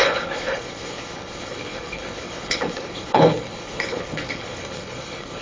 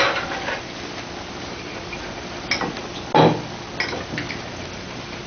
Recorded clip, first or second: second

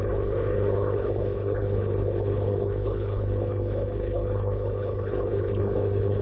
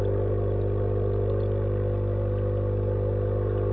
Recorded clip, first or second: second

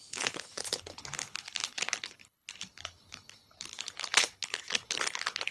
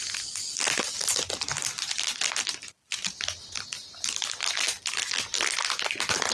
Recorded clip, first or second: second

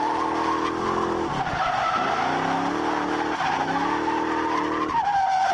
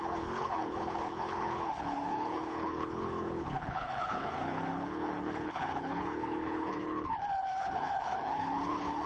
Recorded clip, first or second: first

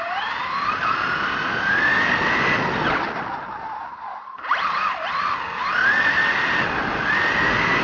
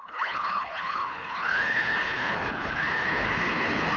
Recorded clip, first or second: first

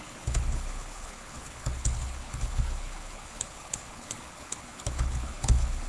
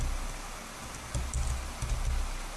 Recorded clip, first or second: second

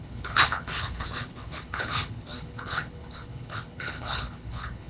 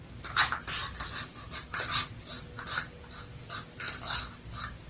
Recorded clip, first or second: second